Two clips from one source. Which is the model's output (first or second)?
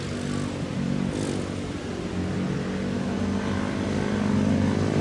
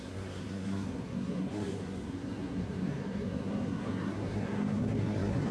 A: second